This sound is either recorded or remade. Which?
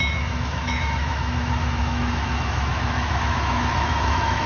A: remade